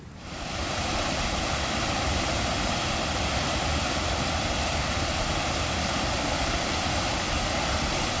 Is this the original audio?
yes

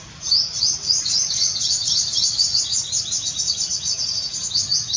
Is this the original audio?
no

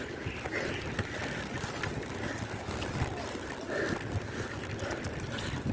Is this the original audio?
yes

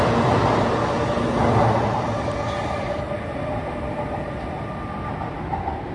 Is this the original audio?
yes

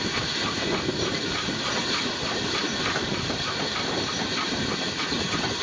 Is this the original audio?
no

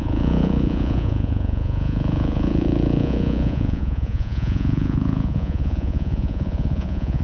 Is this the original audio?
no